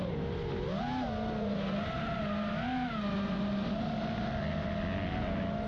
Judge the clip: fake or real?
real